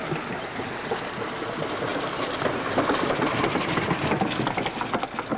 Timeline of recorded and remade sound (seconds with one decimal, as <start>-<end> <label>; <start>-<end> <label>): 0.0-5.4 recorded

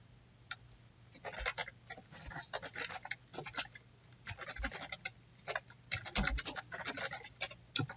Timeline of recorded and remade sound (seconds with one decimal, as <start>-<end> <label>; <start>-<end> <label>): 0.0-8.0 recorded

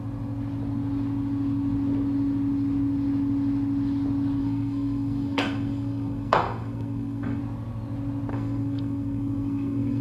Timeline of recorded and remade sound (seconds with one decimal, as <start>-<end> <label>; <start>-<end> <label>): 0.0-4.4 recorded; 4.4-7.4 remade; 7.4-8.3 recorded; 8.3-10.0 remade

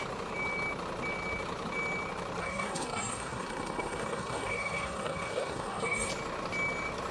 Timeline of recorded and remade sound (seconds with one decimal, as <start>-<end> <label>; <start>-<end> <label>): 0.0-2.4 recorded; 2.4-6.1 remade; 6.1-7.1 recorded

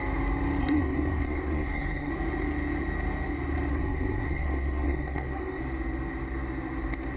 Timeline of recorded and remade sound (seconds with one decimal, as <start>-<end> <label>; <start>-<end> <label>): 0.0-0.6 recorded; 0.6-2.1 remade; 2.1-3.7 recorded; 3.7-5.6 remade; 5.6-7.2 recorded